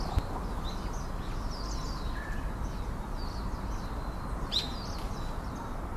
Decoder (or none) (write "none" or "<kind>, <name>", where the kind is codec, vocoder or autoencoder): none